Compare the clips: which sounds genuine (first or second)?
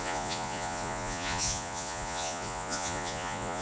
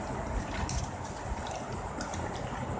second